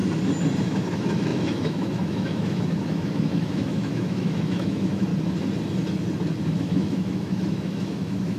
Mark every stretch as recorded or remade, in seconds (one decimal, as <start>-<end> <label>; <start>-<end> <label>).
0.0-0.6 recorded; 0.6-5.1 remade; 5.1-6.6 recorded; 6.6-8.4 remade